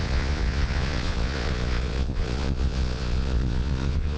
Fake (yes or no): yes